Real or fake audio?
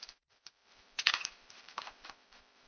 fake